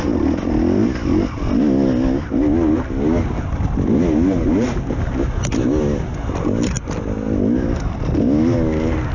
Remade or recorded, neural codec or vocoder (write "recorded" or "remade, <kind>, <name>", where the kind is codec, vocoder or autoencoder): recorded